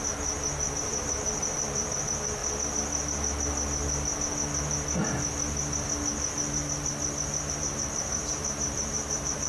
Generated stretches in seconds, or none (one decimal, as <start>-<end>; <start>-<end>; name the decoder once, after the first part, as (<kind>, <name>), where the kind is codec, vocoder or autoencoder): 0.0-2.4 (vocoder, BigVGAN v2); 7.5-9.5